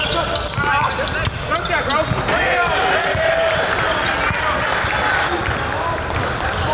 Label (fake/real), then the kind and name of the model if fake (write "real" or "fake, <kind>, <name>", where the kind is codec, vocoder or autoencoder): real